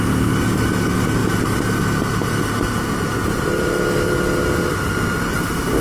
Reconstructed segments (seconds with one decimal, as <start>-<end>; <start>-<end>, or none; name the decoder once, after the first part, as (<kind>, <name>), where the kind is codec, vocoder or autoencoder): none

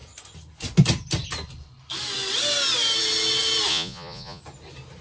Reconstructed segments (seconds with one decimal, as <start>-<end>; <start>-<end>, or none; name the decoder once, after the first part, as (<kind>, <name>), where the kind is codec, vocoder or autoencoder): 3.7-4.4 (vocoder, Vocos)

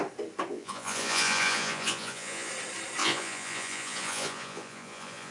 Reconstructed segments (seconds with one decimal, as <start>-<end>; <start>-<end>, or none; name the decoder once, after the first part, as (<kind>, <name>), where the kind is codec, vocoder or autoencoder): 0.5-2.5 (vocoder, Vocos); 3.0-5.3

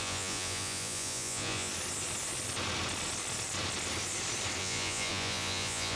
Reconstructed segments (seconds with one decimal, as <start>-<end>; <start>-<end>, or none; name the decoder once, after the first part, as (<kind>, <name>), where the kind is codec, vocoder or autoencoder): 0.0-1.7 (vocoder, Vocos); 4.6-6.0

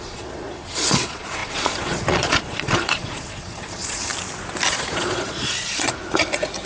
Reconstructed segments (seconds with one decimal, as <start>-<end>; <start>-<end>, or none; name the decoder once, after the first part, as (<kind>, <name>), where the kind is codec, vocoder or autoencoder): 0.0-4.1 (vocoder, Vocos); 4.7-6.0

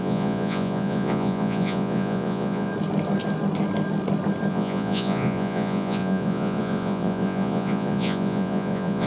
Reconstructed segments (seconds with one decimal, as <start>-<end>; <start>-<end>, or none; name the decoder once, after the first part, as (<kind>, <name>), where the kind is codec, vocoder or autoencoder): 0.0-2.7 (vocoder, Vocos); 4.5-9.1

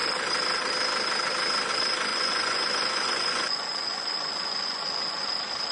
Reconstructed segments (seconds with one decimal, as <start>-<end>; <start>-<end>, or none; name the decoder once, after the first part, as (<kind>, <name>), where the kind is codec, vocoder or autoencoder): 2.1-5.3 (vocoder, Vocos)